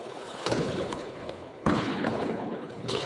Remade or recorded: remade